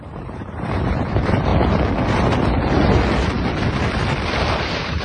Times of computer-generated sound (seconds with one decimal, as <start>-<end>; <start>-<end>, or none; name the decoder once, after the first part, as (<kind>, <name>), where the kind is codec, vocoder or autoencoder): 0.0-1.5 (vocoder, BigVGAN v2); 4.5-5.0